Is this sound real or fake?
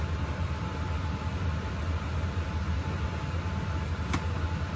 real